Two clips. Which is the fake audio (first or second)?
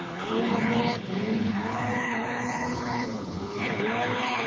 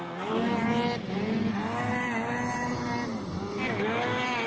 first